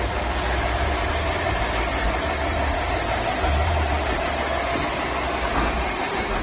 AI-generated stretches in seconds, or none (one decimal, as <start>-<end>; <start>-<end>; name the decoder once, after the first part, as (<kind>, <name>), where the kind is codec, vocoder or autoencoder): 1.9-4.6 (vocoder, BigVGAN v2); 5.5-6.4